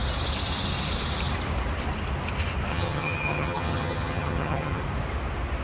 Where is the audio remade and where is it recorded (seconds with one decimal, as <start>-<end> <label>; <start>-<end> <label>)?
0.0-2.7 recorded; 2.7-4.8 remade; 4.8-5.6 recorded